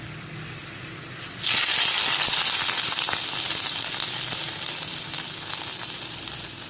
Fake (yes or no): no